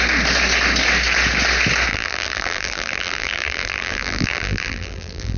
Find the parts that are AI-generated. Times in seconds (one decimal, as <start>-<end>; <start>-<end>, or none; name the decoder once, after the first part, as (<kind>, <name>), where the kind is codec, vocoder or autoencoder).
1.9-5.4 (vocoder, BigVGAN v2)